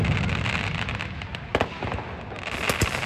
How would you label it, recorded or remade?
recorded